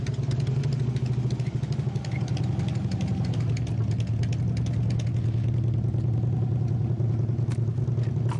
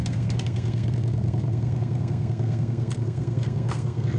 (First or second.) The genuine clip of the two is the first